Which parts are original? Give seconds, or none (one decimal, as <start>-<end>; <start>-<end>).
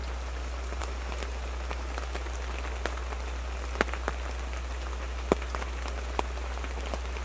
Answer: 0.0-7.2